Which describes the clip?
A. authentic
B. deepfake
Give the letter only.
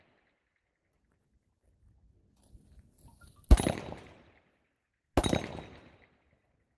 A